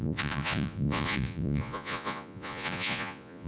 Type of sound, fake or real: fake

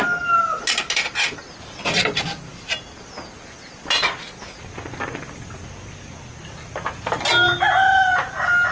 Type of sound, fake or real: real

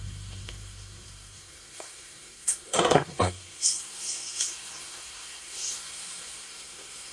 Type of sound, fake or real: fake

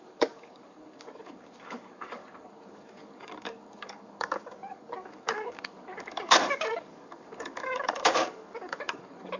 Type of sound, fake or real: fake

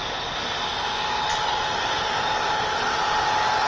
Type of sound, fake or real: real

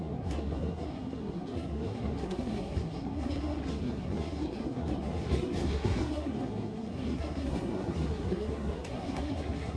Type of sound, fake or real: fake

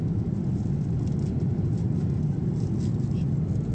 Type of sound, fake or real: real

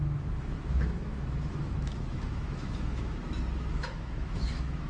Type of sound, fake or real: fake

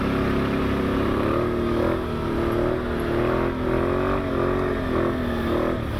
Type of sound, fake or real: real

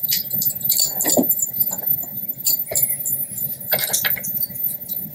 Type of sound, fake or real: fake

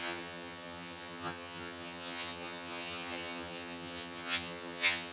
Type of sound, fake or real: fake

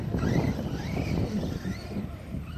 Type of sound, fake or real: real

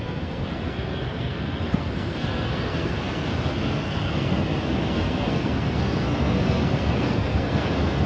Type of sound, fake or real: fake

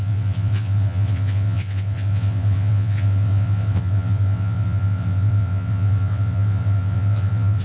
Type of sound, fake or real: fake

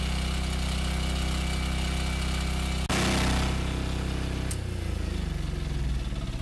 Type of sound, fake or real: real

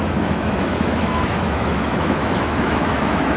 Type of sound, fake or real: fake